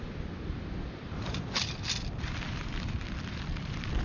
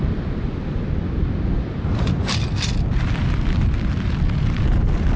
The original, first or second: second